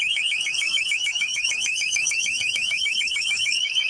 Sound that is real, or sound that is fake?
fake